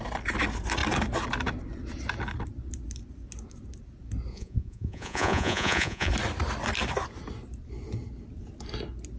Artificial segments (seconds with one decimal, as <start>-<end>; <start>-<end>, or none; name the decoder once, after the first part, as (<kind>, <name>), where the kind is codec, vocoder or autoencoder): 4.3-6.1 (vocoder, Vocos)